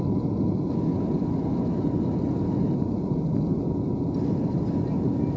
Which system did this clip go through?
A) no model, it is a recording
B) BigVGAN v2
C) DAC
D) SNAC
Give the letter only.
A